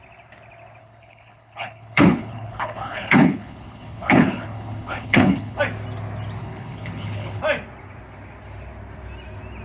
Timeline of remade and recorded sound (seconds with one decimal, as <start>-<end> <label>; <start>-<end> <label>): 0.0-0.8 recorded; 0.8-5.6 remade; 5.6-6.4 recorded; 6.4-7.4 remade; 7.4-9.6 recorded